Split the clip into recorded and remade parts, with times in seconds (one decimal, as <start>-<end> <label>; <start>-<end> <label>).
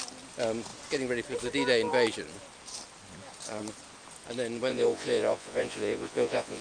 0.0-4.7 recorded; 4.7-6.6 remade